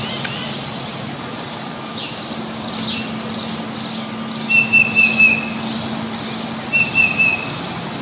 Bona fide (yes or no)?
yes